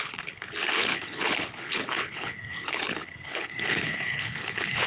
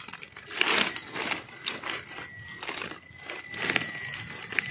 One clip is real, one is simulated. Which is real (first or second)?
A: second